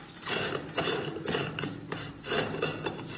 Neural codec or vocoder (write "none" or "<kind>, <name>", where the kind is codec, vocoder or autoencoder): none